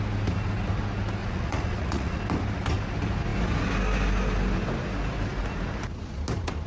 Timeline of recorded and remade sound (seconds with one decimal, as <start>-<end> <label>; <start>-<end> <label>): 0.0-1.2 recorded; 1.2-2.2 remade; 2.2-6.7 recorded